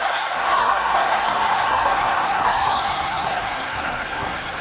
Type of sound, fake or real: fake